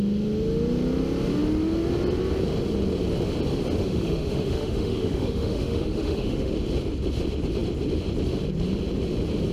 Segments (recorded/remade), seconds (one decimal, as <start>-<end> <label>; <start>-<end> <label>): 0.0-3.8 recorded; 3.8-6.5 remade; 6.5-9.5 recorded